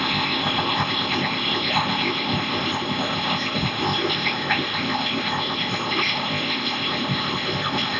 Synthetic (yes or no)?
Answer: yes